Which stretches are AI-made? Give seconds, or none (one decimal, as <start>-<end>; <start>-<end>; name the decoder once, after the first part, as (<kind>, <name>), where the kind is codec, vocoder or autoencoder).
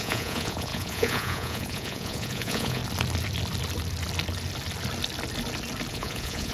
0.0-2.8 (vocoder, Vocos); 5.9-6.5